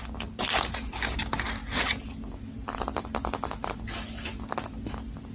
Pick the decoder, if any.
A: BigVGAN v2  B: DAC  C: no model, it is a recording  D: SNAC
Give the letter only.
C